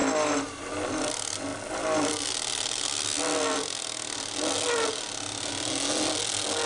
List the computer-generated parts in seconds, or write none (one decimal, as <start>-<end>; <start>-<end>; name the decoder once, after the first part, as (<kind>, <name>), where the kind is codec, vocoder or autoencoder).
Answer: none